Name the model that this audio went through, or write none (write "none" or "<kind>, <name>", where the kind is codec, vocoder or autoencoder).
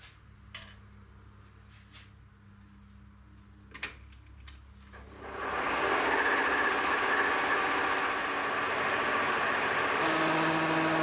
none